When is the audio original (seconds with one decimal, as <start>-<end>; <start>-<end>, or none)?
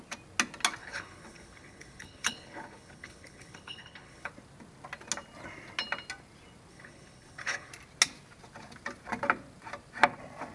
0.0-0.8; 4.3-6.7; 7.7-10.5